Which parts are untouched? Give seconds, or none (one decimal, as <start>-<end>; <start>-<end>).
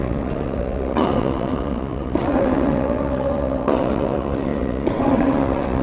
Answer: none